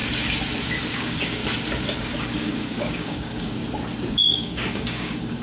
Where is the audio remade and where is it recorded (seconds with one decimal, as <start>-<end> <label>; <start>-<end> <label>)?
0.0-0.9 recorded; 0.9-1.4 remade; 1.4-2.0 recorded; 2.0-3.6 remade; 3.6-4.1 recorded; 4.1-5.4 remade